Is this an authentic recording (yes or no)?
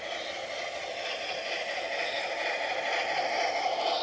no